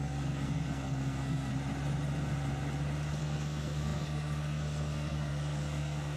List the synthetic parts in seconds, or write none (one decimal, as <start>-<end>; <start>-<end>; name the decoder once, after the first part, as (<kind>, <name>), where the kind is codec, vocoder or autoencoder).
0.0-1.5 (codec, SNAC); 3.2-6.2